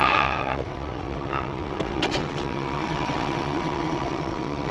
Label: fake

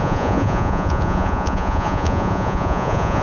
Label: fake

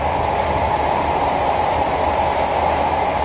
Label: real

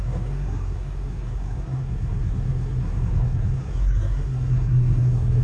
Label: fake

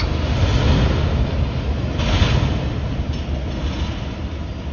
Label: real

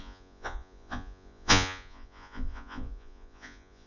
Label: fake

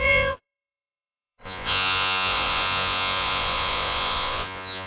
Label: fake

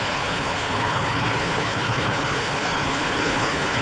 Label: fake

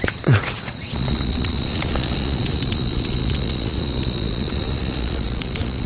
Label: fake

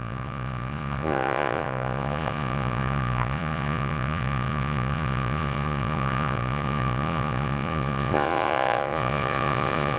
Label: fake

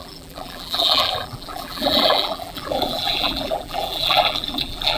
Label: fake